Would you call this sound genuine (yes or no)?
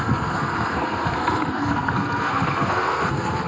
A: no